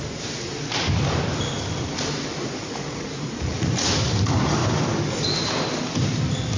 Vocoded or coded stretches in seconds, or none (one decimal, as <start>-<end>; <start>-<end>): 2.3-3.9